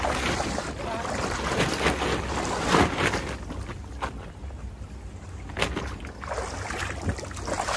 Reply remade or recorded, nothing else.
recorded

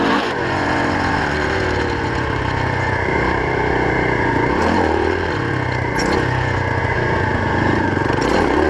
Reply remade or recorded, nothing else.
remade